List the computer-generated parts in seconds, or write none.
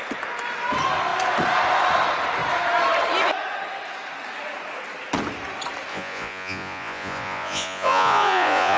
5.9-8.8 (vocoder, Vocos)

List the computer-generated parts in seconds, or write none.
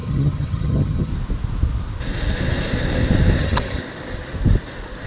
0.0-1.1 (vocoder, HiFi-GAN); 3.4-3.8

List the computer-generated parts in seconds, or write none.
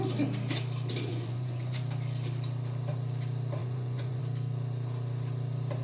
1.1-1.8 (vocoder, Vocos); 3.6-4.2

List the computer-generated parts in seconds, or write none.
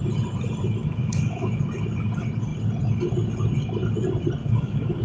0.8-1.6 (autoencoder, DAC-VAE); 4.4-5.0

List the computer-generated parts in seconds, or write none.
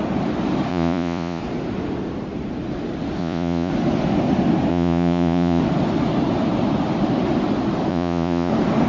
0.7-1.4 (vocoder, Vocos); 3.2-3.7; 4.7-5.6; 7.9-8.5